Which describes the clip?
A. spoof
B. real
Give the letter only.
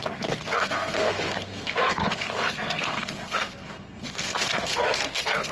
A